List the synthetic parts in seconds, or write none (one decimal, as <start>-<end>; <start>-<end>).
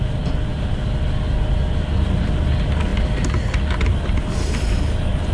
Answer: none